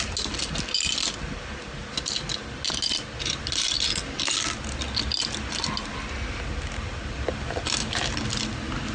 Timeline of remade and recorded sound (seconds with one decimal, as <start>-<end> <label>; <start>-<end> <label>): 0.0-8.9 recorded